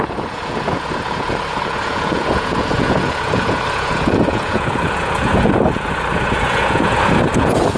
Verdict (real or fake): fake